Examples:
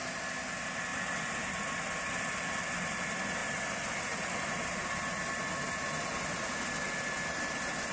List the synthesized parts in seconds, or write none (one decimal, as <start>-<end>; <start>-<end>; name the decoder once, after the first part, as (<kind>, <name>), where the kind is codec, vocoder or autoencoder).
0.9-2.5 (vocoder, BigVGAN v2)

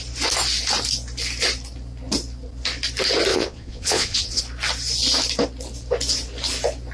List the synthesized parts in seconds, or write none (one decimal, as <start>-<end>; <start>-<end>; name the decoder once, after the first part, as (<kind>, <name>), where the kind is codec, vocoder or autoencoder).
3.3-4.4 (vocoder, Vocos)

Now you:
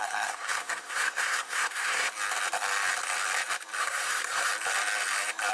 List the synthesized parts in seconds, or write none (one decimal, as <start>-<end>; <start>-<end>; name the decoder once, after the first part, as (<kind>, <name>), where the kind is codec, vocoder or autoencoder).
0.0-2.1 (codec, SNAC); 3.8-4.5

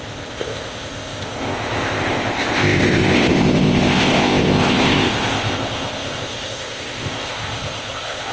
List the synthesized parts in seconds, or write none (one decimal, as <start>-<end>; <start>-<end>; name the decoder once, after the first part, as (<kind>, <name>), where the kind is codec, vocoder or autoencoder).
0.0-8.3 (codec, ZipCodec)

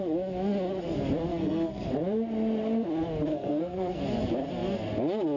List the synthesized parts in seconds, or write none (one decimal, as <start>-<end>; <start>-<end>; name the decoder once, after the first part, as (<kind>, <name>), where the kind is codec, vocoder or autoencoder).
1.3-1.9 (codec, SNAC); 3.3-4.0

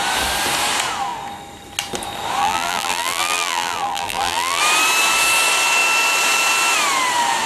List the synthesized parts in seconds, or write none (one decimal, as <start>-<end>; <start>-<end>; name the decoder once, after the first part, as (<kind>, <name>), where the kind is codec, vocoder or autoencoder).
2.4-4.6 (vocoder, BigVGAN v2)

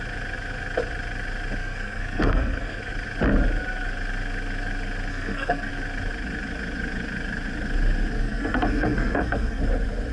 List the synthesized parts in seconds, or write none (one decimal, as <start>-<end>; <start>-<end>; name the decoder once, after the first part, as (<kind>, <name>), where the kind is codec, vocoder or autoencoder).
1.6-2.8 (codec, SNAC); 5.1-5.7; 8.2-9.6